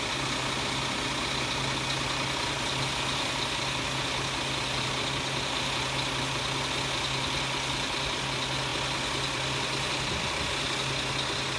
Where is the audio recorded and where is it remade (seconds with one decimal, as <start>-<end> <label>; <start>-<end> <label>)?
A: 0.0-11.6 recorded